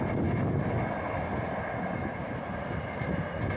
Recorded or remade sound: recorded